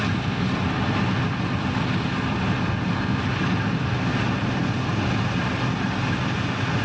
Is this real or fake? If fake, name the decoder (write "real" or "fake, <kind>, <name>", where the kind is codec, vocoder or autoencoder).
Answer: real